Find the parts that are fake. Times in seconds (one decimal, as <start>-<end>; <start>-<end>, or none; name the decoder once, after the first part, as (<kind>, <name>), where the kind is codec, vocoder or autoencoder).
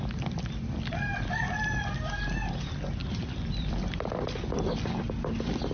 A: 1.1-1.7 (vocoder, BigVGAN v2); 3.0-3.8